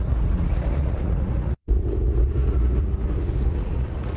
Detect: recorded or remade remade